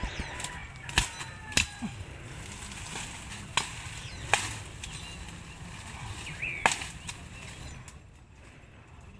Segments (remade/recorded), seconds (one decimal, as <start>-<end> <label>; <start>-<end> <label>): 0.0-9.2 recorded